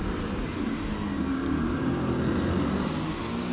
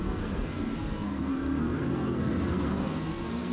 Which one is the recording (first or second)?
first